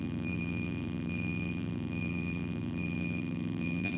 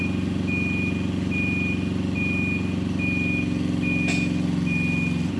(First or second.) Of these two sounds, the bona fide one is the second